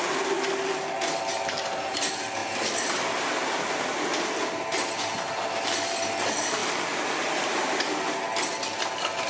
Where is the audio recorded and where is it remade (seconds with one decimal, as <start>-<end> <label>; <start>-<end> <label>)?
0.0-9.3 recorded